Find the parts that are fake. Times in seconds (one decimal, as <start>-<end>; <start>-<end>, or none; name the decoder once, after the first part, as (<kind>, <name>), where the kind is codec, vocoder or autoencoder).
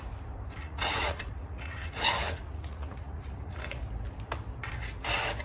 0.6-3.8 (vocoder, Vocos)